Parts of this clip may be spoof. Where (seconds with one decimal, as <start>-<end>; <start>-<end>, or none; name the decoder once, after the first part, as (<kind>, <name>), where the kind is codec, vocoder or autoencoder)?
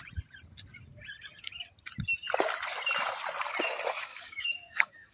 4.1-5.1 (codec, DAC)